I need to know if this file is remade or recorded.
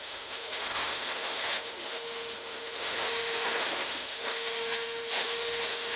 remade